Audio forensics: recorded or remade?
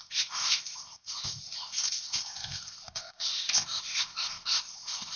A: remade